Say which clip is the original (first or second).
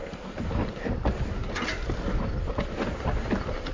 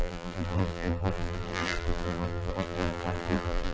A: first